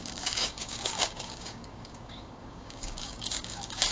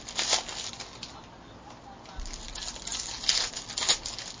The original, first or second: second